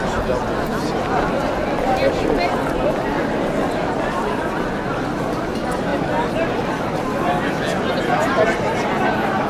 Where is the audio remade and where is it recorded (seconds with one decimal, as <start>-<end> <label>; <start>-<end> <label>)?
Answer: 0.0-9.5 recorded